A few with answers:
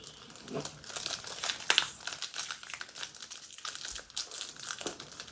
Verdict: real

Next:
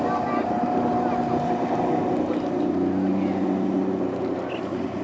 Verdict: real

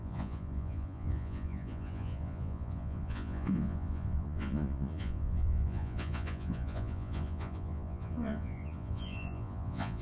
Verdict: fake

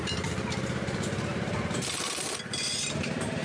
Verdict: fake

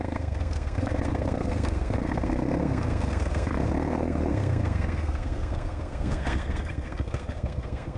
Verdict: fake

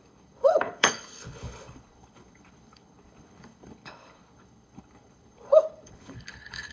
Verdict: fake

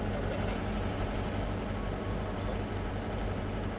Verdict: real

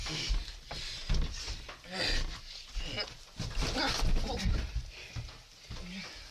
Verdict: real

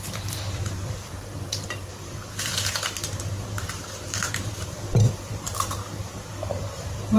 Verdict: fake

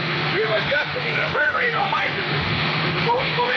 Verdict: fake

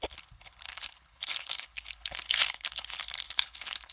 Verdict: fake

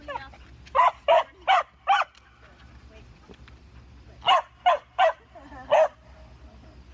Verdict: real